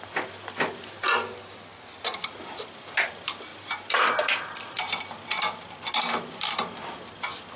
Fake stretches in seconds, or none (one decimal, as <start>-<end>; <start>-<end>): none